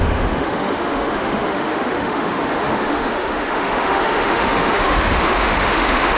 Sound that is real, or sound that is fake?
fake